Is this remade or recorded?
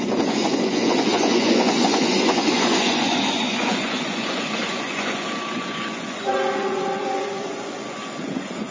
remade